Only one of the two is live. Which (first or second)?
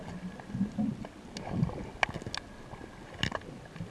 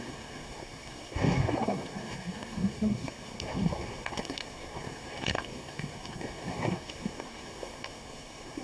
first